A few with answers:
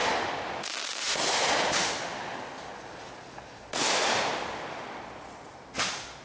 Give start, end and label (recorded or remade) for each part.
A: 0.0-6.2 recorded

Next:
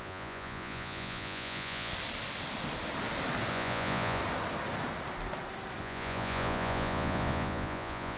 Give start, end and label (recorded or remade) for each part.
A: 0.0-1.9 remade; 1.9-3.5 recorded; 3.5-4.2 remade; 4.2-5.8 recorded; 5.8-8.2 remade

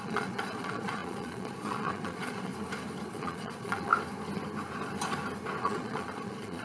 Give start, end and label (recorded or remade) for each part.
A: 0.0-2.5 remade; 2.5-3.1 recorded; 3.1-3.9 remade; 3.9-5.6 recorded; 5.6-6.6 remade